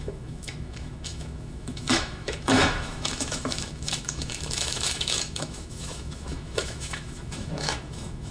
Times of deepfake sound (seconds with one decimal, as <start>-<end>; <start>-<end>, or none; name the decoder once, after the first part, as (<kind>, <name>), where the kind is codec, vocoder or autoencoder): 0.0-8.3 (autoencoder, DAC-VAE)